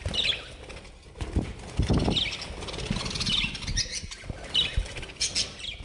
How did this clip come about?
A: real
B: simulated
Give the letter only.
A